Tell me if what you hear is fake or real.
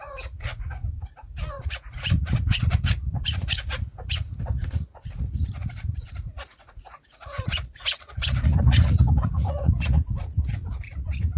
fake